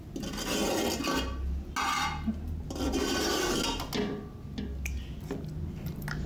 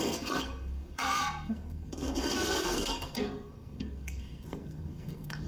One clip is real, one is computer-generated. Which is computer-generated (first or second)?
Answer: second